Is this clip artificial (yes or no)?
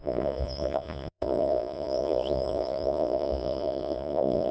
yes